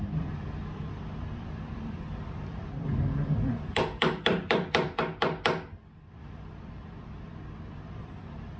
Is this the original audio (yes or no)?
no